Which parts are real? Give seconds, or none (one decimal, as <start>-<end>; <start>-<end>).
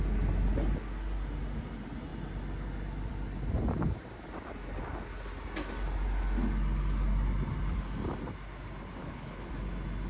0.0-9.0; 9.5-10.1